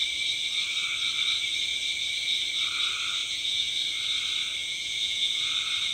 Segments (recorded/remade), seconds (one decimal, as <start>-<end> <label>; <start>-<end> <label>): 0.0-3.2 recorded; 3.2-3.7 remade; 3.7-4.6 recorded; 4.6-5.5 remade; 5.5-5.9 recorded